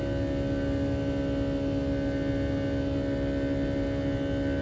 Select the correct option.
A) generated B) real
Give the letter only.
B